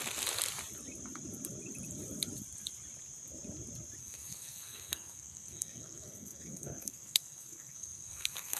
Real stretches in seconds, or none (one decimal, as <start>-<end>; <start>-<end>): 0.0-4.0